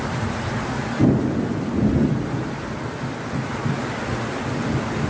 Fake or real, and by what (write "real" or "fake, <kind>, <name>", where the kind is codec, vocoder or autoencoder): real